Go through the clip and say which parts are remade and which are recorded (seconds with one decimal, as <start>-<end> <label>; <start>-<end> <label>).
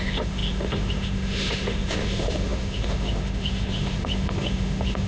0.0-5.1 remade